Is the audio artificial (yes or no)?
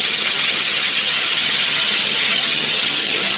yes